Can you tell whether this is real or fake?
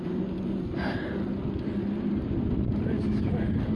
real